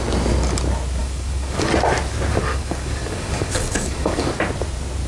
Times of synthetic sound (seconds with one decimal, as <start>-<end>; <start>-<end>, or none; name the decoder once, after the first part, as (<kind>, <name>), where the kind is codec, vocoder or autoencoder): 1.0-1.7 (codec, DAC); 2.3-4.3